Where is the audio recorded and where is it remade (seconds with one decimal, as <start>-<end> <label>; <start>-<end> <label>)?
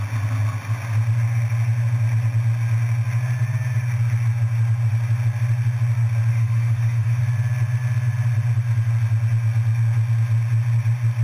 0.0-6.3 recorded; 6.3-7.2 remade; 7.2-11.2 recorded